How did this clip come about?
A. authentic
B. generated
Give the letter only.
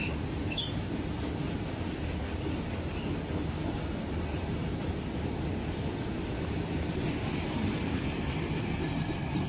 A